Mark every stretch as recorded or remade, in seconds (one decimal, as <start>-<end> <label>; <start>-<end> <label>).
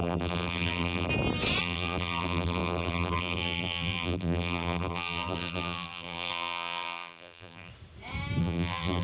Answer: 0.0-1.1 remade; 1.1-1.6 recorded; 1.6-7.7 remade; 7.7-8.4 recorded; 8.4-9.0 remade